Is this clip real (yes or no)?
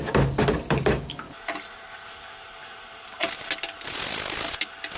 yes